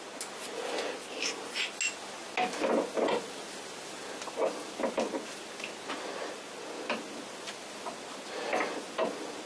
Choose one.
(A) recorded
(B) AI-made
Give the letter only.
A